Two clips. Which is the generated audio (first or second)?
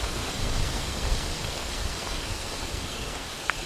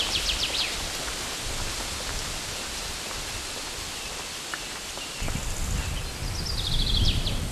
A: first